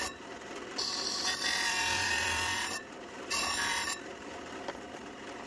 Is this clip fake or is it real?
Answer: fake